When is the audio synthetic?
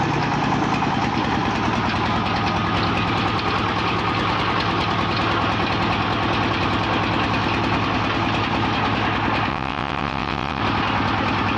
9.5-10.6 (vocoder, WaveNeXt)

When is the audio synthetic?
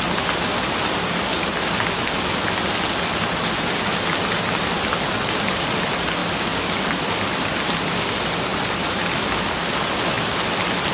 none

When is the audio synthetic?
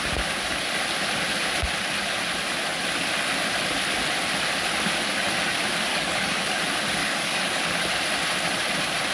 5.9-6.6 (codec, DAC); 7.0-7.6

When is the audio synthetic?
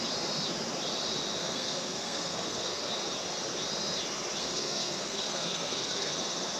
1.4-2.9 (codec, SNAC); 4.4-6.1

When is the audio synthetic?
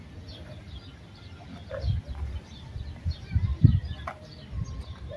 0.0-0.9 (vocoder, BigVGAN v2); 2.5-3.5; 4.8-5.2